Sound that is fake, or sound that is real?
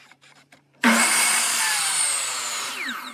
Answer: fake